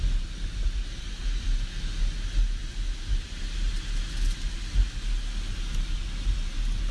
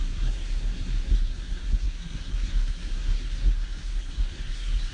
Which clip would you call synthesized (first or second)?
second